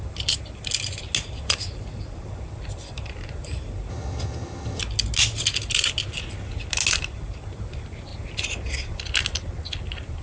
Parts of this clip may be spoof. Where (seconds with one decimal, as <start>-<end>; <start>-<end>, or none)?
3.9-4.8